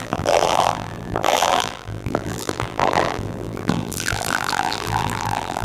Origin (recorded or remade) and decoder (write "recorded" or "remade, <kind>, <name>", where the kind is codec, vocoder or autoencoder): remade, vocoder, BigVGAN v2